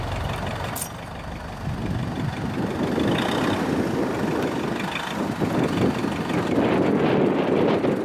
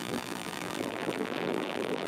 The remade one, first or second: second